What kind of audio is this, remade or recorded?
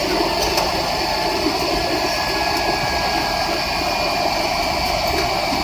recorded